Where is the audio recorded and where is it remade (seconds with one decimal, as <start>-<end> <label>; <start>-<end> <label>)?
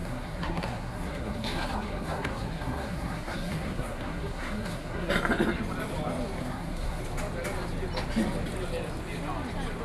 0.0-5.1 remade; 5.1-6.4 recorded; 6.4-7.0 remade; 7.0-9.8 recorded